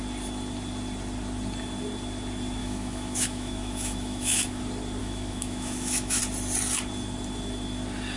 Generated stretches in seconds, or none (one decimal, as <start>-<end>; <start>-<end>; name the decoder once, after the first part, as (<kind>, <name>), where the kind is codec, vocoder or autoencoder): 2.6-4.6 (autoencoder, DAC-VAE); 5.0-6.2